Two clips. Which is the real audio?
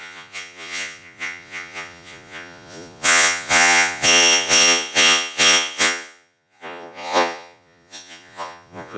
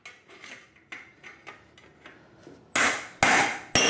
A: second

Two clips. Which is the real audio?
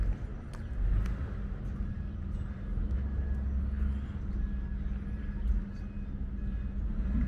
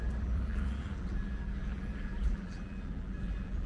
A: first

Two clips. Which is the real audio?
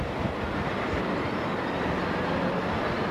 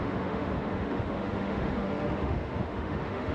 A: first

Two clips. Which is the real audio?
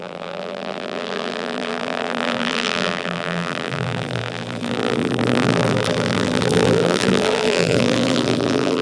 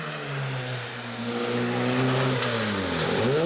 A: second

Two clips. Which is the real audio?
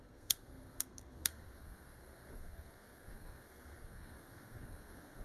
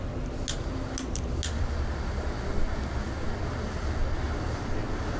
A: second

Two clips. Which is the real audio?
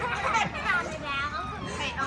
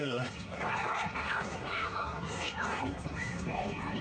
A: first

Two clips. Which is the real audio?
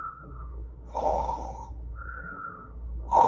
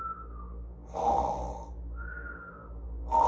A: second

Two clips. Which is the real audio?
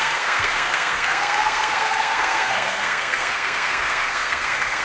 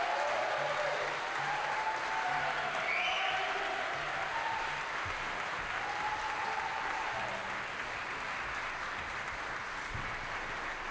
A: second